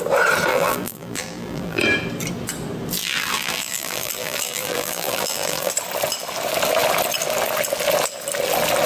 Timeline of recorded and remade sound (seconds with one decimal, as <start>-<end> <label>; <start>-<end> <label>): 0.0-0.5 recorded; 0.5-1.8 remade; 1.8-3.0 recorded; 3.0-5.7 remade; 5.7-8.9 recorded

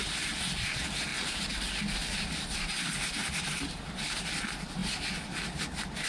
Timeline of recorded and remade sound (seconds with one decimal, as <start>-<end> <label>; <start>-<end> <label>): 0.0-1.1 recorded; 1.1-2.6 remade; 2.6-3.2 recorded; 3.2-4.0 remade; 4.0-6.1 recorded

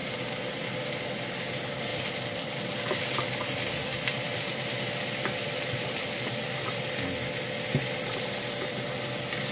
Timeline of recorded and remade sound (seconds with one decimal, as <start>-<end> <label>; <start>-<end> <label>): 0.0-0.9 remade; 0.9-1.9 recorded; 1.9-6.9 remade; 6.9-9.5 recorded

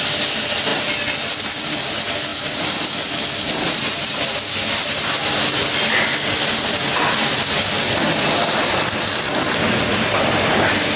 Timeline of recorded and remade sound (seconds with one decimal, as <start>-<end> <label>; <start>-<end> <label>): 0.0-2.3 recorded; 2.3-3.1 remade; 3.1-11.0 recorded

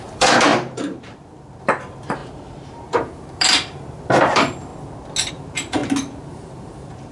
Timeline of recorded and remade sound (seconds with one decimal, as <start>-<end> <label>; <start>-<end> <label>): 0.0-4.7 remade; 4.7-5.3 recorded; 5.3-5.8 remade; 5.8-6.3 recorded; 6.3-7.1 remade

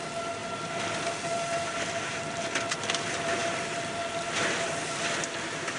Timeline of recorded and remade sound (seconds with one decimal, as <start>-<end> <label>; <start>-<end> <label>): 0.0-3.4 recorded; 3.4-5.0 remade; 5.0-5.8 recorded

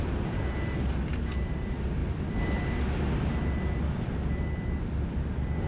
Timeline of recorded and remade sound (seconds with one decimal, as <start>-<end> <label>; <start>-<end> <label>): 0.0-5.7 recorded